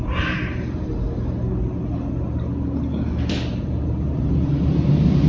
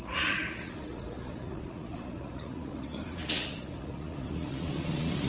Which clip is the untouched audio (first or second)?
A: first